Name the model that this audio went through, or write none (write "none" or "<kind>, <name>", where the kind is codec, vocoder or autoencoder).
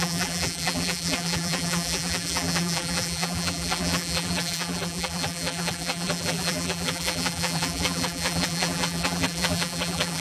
vocoder, BigVGAN v2